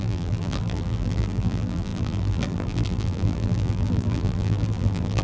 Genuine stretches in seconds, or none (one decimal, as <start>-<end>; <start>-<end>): none